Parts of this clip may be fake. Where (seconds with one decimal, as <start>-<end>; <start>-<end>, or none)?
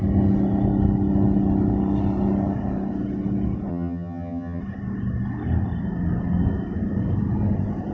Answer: 3.7-4.6